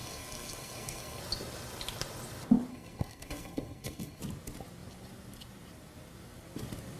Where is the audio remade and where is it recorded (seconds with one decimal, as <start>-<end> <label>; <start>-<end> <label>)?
0.0-1.2 remade; 1.2-2.7 recorded; 2.7-4.2 remade; 4.2-7.0 recorded